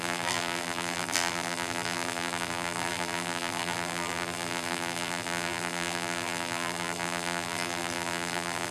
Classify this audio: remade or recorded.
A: remade